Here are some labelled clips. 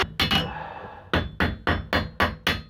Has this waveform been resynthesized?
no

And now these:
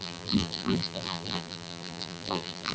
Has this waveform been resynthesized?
yes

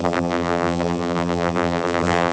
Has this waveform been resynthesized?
yes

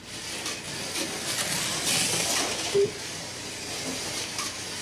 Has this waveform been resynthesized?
no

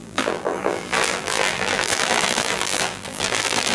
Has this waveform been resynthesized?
yes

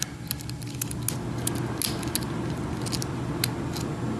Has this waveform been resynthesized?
no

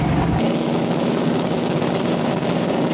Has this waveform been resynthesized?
yes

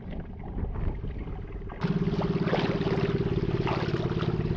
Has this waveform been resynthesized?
no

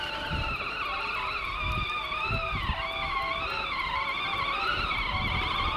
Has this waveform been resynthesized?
no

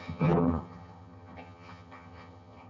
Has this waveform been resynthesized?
yes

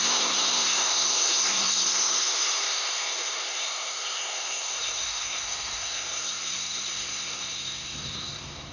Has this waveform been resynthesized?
yes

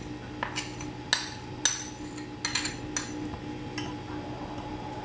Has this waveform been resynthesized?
no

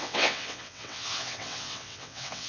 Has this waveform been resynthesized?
yes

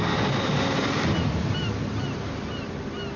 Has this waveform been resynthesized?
no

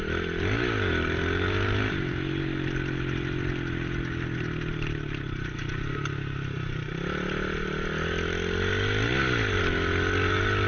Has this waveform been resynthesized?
no